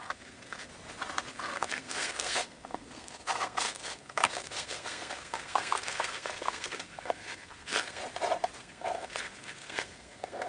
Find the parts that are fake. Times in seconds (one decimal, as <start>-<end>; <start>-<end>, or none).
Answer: 0.0-0.7; 1.3-8.0; 8.6-10.5